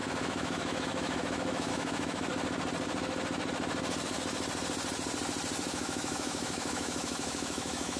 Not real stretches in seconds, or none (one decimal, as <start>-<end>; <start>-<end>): 0.0-2.3; 5.7-8.0